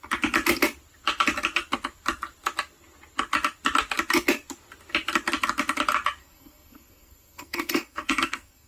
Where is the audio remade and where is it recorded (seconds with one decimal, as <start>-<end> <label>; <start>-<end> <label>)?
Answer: 0.0-6.2 recorded; 6.2-8.7 remade